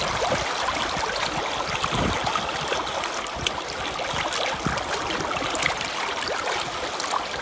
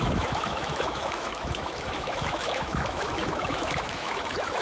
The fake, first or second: second